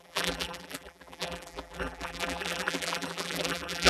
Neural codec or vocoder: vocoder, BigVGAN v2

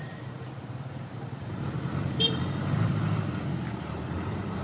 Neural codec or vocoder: vocoder, BigVGAN v2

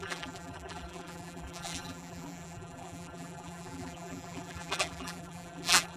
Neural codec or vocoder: vocoder, BigVGAN v2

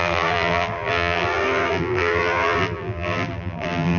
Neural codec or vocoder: vocoder, BigVGAN v2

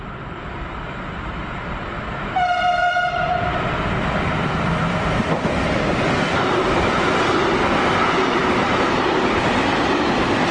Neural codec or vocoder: vocoder, BigVGAN v2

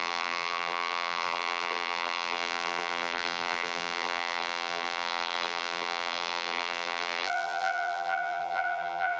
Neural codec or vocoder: vocoder, BigVGAN v2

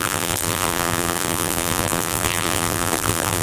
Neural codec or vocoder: vocoder, BigVGAN v2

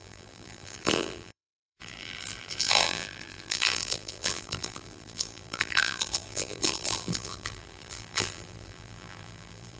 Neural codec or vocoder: vocoder, BigVGAN v2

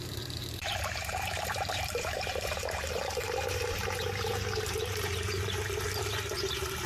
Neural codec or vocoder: vocoder, BigVGAN v2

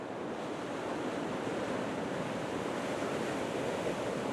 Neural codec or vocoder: none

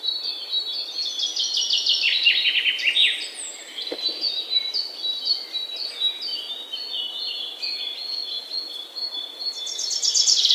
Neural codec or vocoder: none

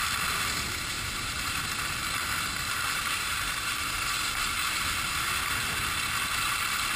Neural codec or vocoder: vocoder, BigVGAN v2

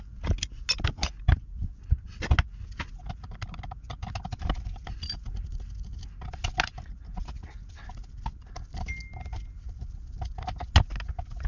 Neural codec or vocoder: none